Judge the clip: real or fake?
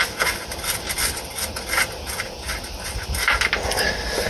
real